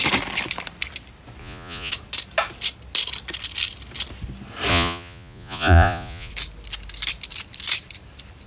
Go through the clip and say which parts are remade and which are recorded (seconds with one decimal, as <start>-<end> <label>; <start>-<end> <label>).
0.0-1.4 recorded; 1.4-1.9 remade; 1.9-4.7 recorded; 4.7-6.3 remade; 6.3-8.5 recorded